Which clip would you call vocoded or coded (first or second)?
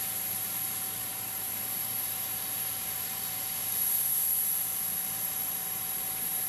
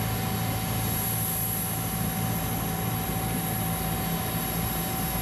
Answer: first